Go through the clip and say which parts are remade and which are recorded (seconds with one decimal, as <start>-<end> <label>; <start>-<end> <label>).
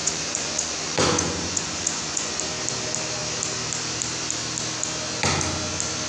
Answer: 0.0-2.3 remade; 2.3-6.1 recorded